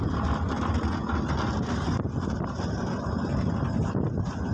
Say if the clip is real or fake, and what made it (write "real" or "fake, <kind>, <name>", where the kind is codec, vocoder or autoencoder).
real